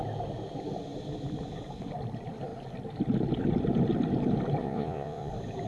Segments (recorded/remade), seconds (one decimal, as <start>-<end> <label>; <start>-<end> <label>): 0.0-4.6 recorded; 4.6-5.3 remade; 5.3-5.7 recorded